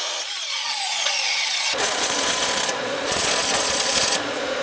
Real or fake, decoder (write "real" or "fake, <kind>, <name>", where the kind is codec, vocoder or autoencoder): fake, vocoder, Vocos